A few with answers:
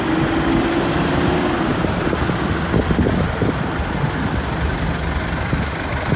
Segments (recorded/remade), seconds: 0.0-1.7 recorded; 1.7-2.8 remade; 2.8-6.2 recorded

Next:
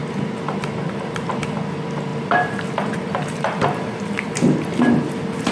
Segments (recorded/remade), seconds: 0.0-2.1 recorded; 2.1-5.5 remade

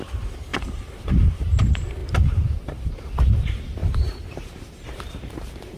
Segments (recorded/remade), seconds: 0.0-5.8 remade

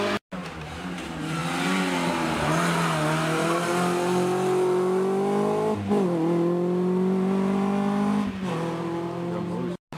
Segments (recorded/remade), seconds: 0.0-10.0 recorded

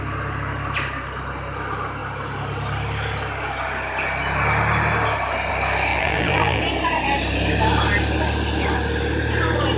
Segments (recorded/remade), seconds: 0.0-5.9 recorded; 5.9-6.6 remade; 6.6-9.8 recorded